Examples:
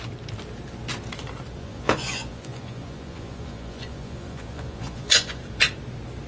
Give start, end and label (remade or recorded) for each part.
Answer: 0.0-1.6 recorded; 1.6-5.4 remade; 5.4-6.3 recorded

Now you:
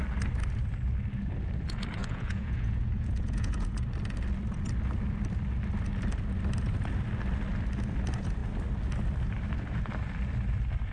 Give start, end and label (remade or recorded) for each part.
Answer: 0.0-2.0 recorded; 2.0-3.8 remade; 3.8-10.9 recorded

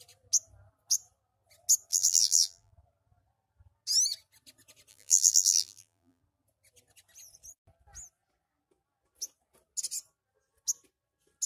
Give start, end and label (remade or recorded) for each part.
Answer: 0.0-1.9 recorded; 1.9-2.7 remade; 2.7-4.9 recorded; 4.9-6.2 remade; 6.2-11.5 recorded

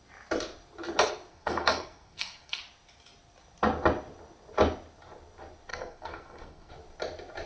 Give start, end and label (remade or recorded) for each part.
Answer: 0.0-1.3 recorded; 1.3-2.6 remade; 2.6-5.7 recorded; 5.7-6.7 remade; 6.7-7.5 recorded